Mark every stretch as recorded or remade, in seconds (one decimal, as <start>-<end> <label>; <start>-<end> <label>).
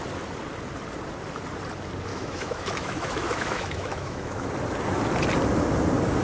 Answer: 0.0-2.1 recorded; 2.1-4.5 remade; 4.5-6.2 recorded